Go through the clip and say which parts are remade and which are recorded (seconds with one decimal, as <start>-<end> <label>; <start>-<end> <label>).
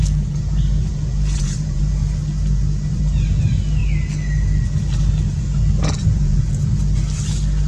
0.0-0.9 recorded; 0.9-1.8 remade; 1.8-6.0 recorded; 6.0-6.7 remade; 6.7-7.7 recorded